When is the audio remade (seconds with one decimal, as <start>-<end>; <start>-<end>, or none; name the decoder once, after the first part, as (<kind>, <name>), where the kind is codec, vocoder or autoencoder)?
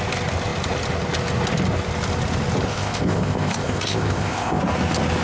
2.7-4.6 (codec, ZipCodec)